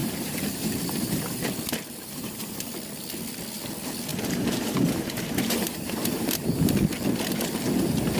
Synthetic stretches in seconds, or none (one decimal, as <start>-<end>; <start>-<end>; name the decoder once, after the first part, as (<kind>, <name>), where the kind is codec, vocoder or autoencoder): 0.0-2.6 (vocoder, BigVGAN v2); 4.1-6.7